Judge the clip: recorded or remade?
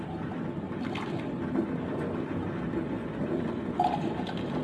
recorded